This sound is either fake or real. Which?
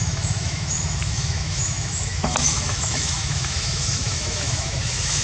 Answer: fake